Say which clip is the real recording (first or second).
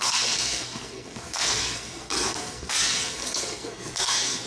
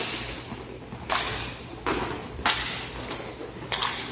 second